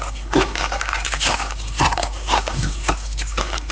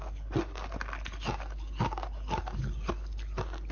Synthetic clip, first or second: first